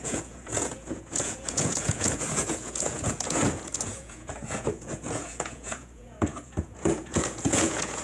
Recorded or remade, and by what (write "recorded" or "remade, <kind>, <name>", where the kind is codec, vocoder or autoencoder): remade, vocoder, Vocos